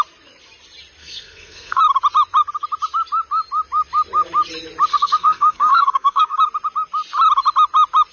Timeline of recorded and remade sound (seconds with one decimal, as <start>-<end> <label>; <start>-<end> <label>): 0.0-1.0 recorded; 1.0-1.8 remade; 1.8-4.9 recorded; 4.9-6.4 remade; 6.4-8.1 recorded